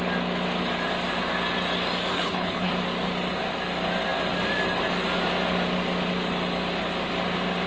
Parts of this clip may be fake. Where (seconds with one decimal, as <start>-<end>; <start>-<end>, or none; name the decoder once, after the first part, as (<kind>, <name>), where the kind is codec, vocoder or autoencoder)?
2.1-2.7 (codec, HILCodec)